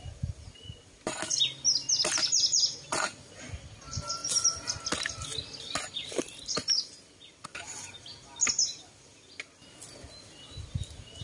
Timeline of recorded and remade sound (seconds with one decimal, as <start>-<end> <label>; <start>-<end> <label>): 0.0-4.2 recorded; 4.2-4.8 remade; 4.8-11.2 recorded